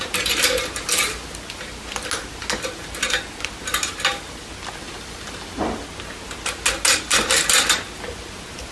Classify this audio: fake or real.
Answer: real